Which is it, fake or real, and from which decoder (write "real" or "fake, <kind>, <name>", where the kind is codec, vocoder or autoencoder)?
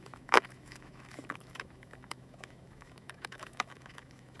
fake, autoencoder, DAC-VAE